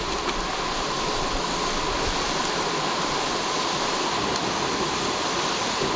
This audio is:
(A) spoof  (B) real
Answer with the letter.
B